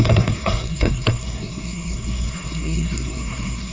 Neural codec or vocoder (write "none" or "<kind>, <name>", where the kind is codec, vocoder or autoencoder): codec, SNAC